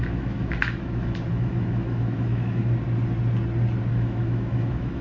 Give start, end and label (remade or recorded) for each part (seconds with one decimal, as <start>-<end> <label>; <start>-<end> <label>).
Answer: 0.0-2.6 remade; 2.6-3.9 recorded; 3.9-5.0 remade